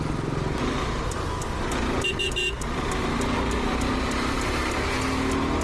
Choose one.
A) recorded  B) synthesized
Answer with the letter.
A